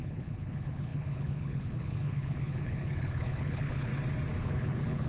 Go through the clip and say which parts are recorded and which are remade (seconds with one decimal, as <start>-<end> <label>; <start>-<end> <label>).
0.0-3.9 remade; 3.9-4.4 recorded; 4.4-5.1 remade